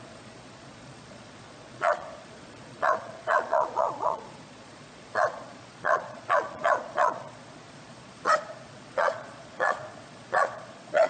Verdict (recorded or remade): remade